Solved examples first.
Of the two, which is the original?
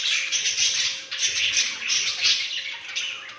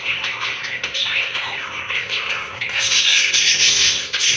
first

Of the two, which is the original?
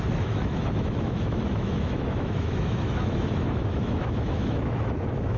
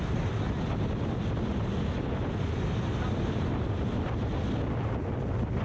second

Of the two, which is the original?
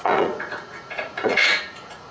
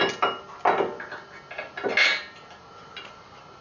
second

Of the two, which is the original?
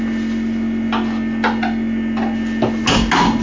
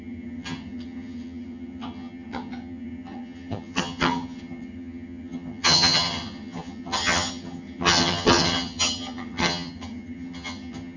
first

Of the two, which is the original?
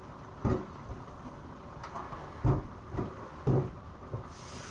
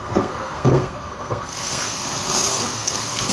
first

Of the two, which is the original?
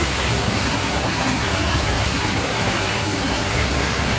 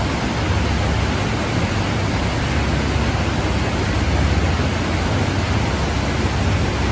second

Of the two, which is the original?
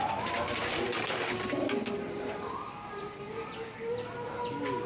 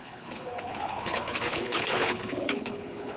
first